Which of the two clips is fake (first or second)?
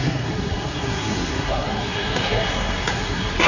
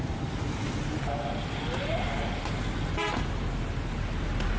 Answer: first